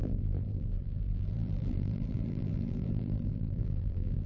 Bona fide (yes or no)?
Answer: no